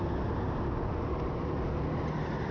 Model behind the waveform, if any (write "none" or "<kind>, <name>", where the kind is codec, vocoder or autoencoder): none